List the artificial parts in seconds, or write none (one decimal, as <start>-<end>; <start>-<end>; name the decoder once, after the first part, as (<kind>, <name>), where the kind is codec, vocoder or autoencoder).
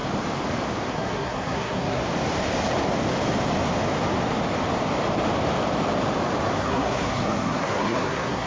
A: 0.9-2.0 (codec, SNAC); 6.6-8.5